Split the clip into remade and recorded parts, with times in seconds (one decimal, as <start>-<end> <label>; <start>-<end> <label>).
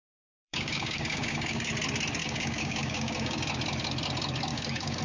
0.0-0.4 recorded; 0.4-1.7 remade; 1.7-2.2 recorded; 2.2-3.4 remade; 3.4-4.5 recorded; 4.5-5.0 remade